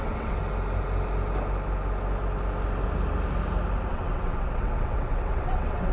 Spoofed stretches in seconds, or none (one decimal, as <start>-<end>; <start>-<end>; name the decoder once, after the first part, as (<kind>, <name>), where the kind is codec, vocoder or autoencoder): 0.0-0.4 (vocoder, WaveNeXt); 3.9-5.9